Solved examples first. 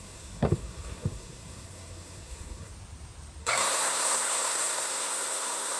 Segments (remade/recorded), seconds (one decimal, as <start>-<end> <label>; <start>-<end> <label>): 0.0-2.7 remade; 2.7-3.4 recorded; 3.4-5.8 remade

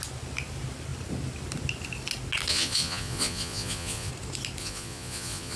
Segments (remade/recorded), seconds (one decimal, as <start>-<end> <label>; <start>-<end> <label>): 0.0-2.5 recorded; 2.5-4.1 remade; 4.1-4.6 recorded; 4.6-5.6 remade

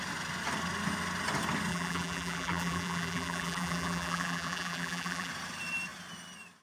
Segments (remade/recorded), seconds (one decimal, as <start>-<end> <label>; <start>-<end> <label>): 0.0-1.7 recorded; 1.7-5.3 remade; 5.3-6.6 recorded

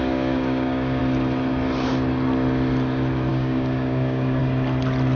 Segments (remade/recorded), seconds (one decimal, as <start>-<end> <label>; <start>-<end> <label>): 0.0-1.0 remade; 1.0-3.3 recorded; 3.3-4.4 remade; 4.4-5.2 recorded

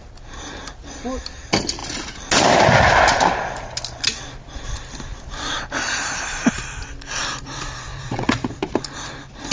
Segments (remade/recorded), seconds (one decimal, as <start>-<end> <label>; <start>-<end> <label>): 0.0-7.9 recorded; 7.9-8.7 remade; 8.7-9.5 recorded